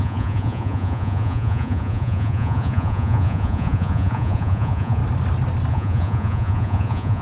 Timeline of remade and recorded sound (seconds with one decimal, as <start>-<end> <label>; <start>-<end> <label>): 0.0-5.0 remade; 5.0-5.7 recorded; 5.7-7.2 remade